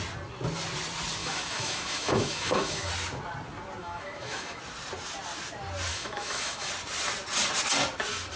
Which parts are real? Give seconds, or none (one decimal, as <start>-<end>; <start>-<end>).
0.0-1.2; 2.9-3.8; 4.6-5.9; 6.7-8.4